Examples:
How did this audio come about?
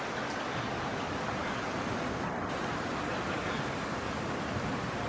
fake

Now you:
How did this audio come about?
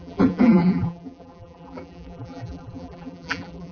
fake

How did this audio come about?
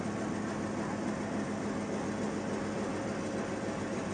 real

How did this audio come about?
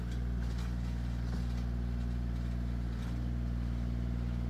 real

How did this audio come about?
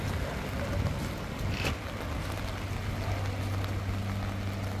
real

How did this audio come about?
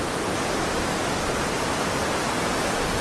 real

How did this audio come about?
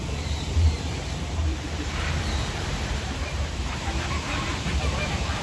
fake